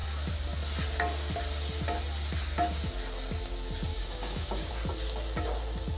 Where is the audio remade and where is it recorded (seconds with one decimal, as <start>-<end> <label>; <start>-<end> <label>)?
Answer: 0.0-3.9 recorded; 3.9-4.7 remade; 4.7-6.0 recorded